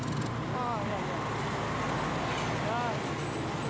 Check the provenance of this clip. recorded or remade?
recorded